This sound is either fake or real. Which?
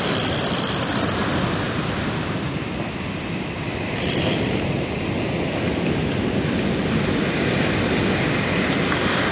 real